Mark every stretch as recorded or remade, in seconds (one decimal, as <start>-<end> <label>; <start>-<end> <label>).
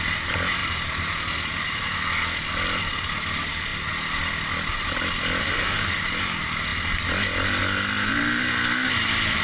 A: 0.0-5.4 recorded; 5.4-6.0 remade; 6.0-9.4 recorded